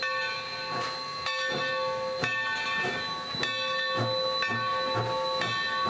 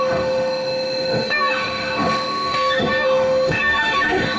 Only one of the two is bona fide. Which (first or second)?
first